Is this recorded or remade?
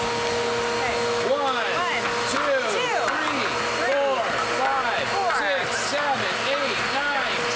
recorded